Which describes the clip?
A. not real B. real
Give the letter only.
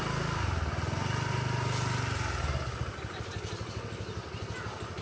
B